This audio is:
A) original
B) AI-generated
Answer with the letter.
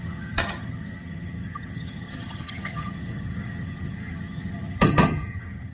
B